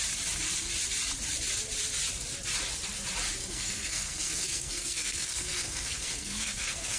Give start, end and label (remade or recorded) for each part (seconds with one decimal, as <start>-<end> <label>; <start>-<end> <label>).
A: 0.0-3.4 recorded; 3.4-7.0 remade